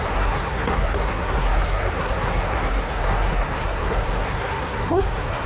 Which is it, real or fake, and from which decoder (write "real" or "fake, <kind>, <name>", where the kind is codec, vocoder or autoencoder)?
fake, codec, SNAC